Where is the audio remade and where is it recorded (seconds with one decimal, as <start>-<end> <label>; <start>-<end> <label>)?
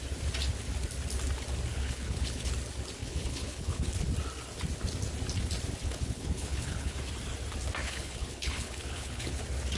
0.0-1.7 recorded; 1.7-2.5 remade; 2.5-3.0 recorded; 3.0-4.0 remade; 4.0-5.8 recorded; 5.8-7.0 remade; 7.0-7.8 recorded; 7.8-9.4 remade; 9.4-9.8 recorded